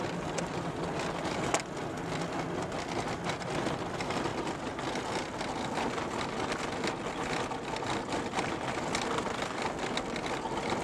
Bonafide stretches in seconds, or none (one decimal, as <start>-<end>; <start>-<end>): 0.0-10.8